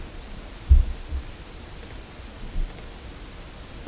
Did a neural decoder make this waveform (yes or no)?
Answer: no